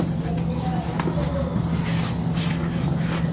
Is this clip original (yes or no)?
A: yes